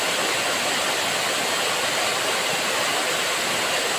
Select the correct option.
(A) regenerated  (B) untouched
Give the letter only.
B